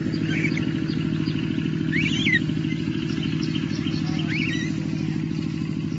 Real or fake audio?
real